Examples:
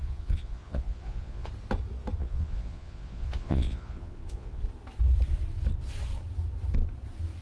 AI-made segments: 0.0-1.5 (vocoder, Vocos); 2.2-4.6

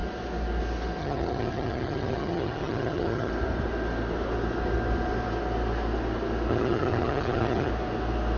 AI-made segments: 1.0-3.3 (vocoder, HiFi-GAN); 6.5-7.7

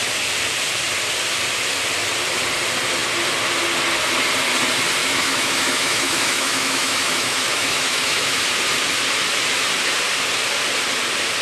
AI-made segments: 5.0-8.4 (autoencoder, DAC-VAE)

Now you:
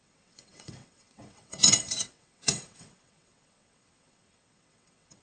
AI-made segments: 0.0-5.2 (vocoder, WaveNeXt)

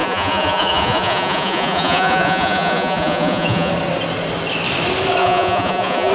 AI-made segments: 0.0-3.7 (vocoder, Vocos); 5.2-6.1

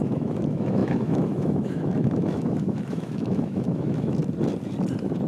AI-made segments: 0.0-4.2 (autoencoder, DAC-VAE)